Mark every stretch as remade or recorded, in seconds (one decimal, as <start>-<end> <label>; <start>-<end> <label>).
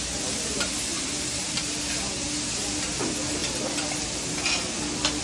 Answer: 0.0-5.2 recorded